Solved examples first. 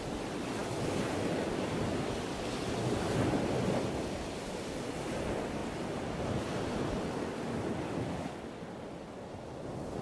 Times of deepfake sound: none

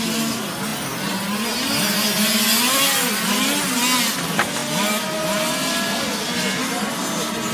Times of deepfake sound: none

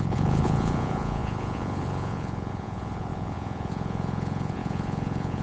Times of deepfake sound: 0.0-5.4 (vocoder, Vocos)

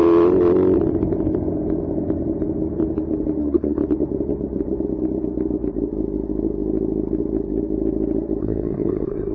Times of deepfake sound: 3.4-3.8 (codec, SNAC); 8.4-9.3

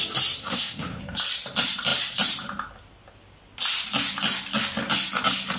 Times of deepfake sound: 0.4-1.0 (codec, SNAC)